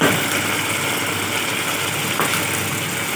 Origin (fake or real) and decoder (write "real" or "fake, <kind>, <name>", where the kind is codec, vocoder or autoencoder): real